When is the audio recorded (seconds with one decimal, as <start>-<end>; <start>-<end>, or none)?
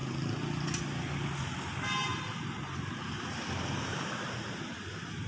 0.0-2.1